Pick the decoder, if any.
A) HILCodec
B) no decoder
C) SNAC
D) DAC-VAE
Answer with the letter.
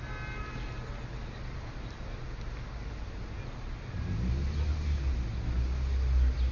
B